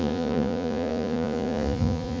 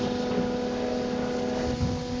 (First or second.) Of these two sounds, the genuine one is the second